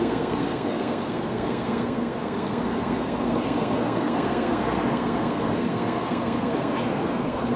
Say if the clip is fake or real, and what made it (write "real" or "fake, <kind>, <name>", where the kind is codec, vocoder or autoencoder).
fake, codec, SNAC